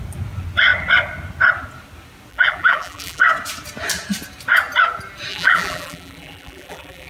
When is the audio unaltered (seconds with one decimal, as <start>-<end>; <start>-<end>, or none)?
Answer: 0.0-2.3; 3.2-5.3